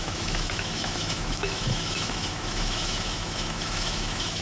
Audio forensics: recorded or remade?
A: remade